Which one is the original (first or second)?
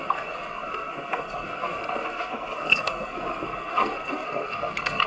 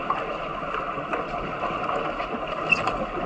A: second